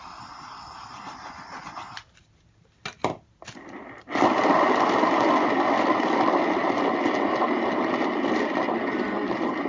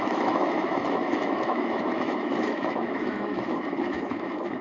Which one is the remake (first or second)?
second